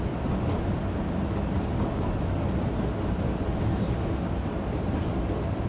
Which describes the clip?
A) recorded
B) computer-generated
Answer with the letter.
A